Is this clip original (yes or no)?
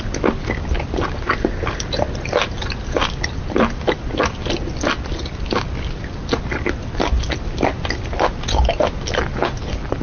yes